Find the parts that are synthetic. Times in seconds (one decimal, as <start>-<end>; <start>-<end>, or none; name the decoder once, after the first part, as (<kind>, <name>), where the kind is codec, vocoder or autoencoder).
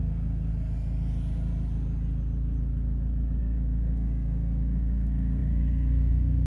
0.0-0.5 (codec, SNAC); 3.4-6.5